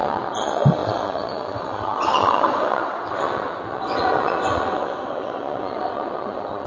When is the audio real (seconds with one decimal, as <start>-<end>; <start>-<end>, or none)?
none